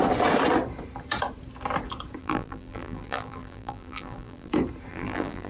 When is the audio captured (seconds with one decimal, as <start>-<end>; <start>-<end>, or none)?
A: 0.0-2.2; 4.5-4.9